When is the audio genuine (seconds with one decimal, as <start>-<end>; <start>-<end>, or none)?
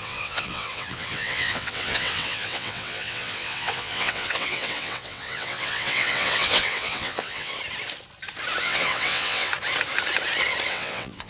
7.5-8.6; 9.5-10.7